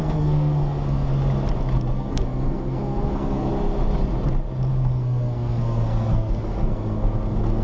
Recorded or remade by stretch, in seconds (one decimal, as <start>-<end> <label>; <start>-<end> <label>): 0.0-1.1 remade; 1.1-1.9 recorded; 1.9-3.5 remade; 3.5-4.7 recorded; 4.7-7.6 remade